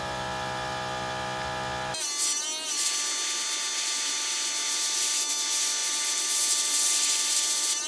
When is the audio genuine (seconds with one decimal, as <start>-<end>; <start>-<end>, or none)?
0.0-7.9